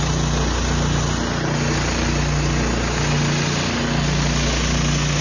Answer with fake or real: real